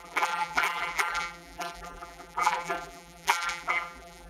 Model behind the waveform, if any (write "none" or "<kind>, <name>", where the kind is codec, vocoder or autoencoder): vocoder, BigVGAN v2